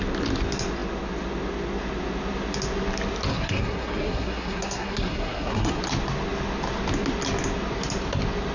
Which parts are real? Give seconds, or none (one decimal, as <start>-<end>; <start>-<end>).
0.0-3.3; 5.8-8.5